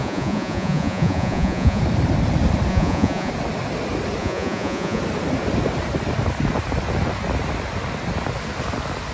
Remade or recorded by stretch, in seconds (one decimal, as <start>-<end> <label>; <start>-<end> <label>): 0.0-1.8 remade; 1.8-2.7 recorded; 2.7-3.3 remade; 3.3-4.2 recorded; 4.2-5.0 remade; 5.0-9.1 recorded